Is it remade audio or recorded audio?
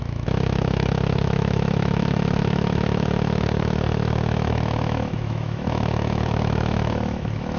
remade